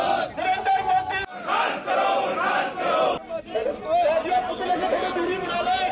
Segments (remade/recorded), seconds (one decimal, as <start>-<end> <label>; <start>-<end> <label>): 0.0-5.9 recorded